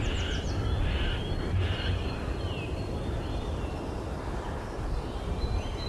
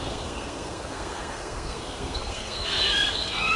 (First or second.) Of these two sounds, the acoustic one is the first